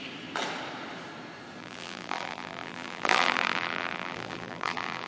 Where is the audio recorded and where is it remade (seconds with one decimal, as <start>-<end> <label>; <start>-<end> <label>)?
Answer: 0.0-1.6 recorded; 1.6-5.1 remade